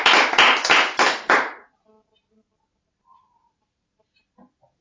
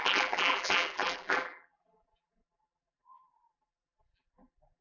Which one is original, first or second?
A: first